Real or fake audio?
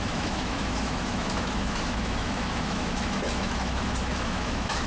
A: fake